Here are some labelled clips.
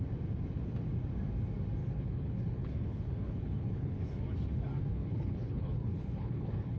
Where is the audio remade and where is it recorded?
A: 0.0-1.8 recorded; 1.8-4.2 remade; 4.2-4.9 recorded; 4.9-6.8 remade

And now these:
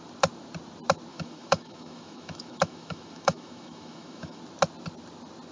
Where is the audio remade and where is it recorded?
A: 0.0-1.1 recorded; 1.1-4.4 remade; 4.4-5.5 recorded